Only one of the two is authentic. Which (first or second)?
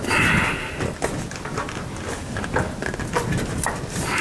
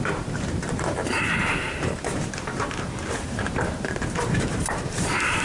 first